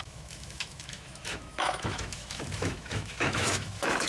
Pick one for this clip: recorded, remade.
remade